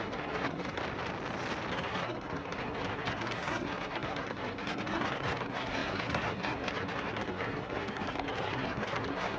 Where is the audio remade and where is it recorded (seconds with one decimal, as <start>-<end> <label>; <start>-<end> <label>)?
0.0-0.8 remade; 0.8-1.7 recorded; 1.7-9.4 remade